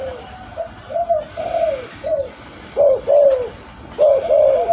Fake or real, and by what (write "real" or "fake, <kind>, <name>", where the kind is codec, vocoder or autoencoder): real